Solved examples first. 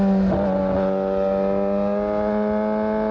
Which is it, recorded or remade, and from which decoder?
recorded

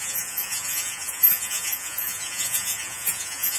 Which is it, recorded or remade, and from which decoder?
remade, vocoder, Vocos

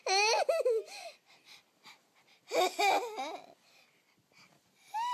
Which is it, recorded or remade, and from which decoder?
recorded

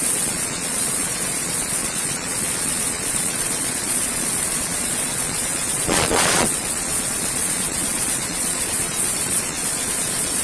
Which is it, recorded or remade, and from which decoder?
remade, vocoder, Vocos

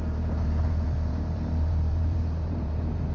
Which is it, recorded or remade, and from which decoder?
remade, vocoder, BigVGAN v2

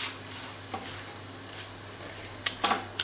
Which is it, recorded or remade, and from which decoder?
recorded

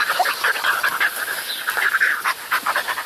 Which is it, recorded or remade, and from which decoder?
recorded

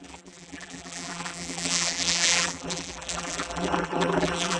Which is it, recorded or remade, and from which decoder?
remade, vocoder, BigVGAN v2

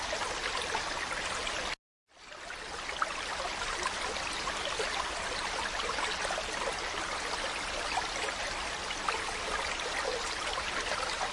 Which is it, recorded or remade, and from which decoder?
recorded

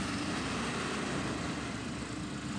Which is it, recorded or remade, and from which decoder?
recorded